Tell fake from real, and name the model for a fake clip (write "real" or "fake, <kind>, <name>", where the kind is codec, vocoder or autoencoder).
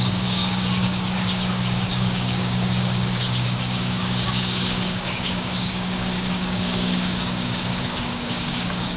fake, codec, DAC